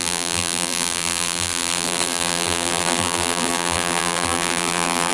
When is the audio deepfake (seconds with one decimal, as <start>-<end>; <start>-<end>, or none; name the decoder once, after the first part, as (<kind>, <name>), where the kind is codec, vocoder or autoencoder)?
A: 0.0-5.1 (vocoder, BigVGAN v2)